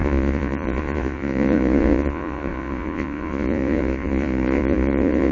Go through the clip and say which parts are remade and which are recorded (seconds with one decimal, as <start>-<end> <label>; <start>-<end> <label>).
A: 0.0-5.3 remade